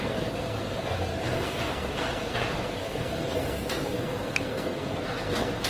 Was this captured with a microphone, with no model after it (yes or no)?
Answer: no